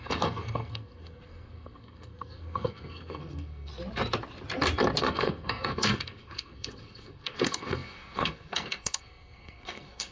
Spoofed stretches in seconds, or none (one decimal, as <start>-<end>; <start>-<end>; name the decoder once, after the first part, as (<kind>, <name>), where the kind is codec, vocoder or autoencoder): 0.0-3.7 (codec, SNAC); 5.0-10.1